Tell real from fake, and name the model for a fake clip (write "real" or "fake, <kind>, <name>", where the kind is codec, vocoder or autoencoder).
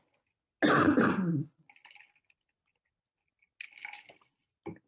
real